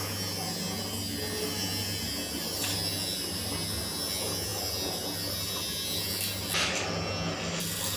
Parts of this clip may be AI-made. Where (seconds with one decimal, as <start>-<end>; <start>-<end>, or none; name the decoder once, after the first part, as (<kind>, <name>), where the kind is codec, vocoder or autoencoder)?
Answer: none